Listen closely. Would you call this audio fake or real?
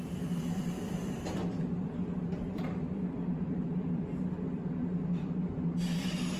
fake